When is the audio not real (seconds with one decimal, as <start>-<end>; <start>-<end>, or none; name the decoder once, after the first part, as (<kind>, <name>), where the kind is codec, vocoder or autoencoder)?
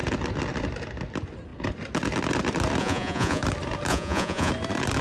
2.8-3.4 (vocoder, Vocos); 3.9-4.5